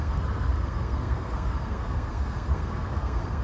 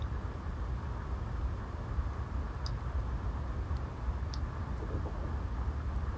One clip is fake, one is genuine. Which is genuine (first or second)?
second